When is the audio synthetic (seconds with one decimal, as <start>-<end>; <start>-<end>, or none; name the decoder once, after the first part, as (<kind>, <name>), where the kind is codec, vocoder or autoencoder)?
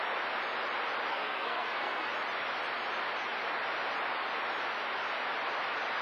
1.1-2.1 (codec, SNAC)